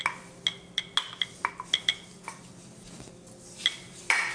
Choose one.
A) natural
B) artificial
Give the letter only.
A